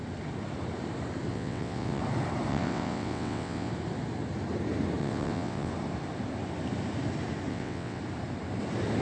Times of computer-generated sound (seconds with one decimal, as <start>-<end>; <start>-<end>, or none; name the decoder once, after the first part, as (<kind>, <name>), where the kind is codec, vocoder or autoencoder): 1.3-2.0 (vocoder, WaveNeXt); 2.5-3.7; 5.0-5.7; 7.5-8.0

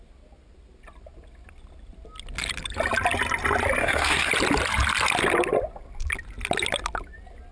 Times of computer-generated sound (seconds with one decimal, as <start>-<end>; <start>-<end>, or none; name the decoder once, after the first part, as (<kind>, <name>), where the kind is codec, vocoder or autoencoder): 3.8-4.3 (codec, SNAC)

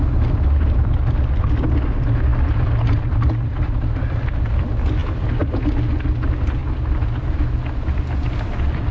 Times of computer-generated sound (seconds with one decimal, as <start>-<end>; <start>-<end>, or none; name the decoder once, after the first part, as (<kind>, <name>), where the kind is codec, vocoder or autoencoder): none

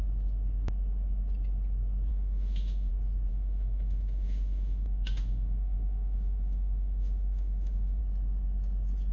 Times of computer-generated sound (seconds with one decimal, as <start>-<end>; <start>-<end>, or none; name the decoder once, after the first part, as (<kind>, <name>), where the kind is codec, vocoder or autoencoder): 2.1-2.9 (autoencoder, DAC-VAE); 3.3-8.0

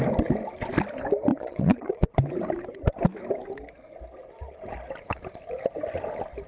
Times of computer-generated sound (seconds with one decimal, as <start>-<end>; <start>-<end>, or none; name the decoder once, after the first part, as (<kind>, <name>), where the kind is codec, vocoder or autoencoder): 1.3-2.2 (vocoder, Vocos)

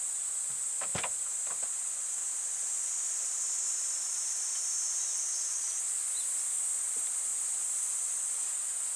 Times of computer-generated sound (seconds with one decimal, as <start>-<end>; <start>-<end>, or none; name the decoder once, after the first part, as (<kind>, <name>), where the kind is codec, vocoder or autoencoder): 0.0-2.2 (vocoder, BigVGAN v2); 3.0-4.5; 6.8-9.0

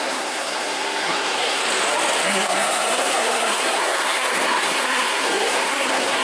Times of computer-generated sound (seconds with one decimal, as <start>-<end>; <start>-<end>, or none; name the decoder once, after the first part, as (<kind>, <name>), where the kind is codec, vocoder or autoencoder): 0.0-1.6 (codec, SNAC); 2.3-6.2

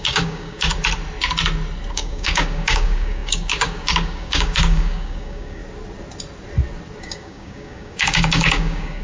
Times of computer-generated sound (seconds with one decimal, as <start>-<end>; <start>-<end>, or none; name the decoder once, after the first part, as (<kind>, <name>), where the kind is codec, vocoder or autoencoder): 0.0-0.7 (codec, DAC); 1.9-5.6; 7.0-9.0